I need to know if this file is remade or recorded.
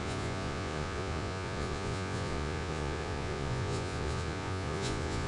remade